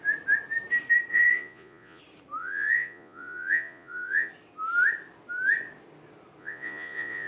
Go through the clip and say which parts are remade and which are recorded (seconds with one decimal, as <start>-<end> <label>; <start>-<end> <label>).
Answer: 0.0-1.1 recorded; 1.1-2.0 remade; 2.0-2.4 recorded; 2.4-4.3 remade; 4.3-6.4 recorded; 6.4-7.3 remade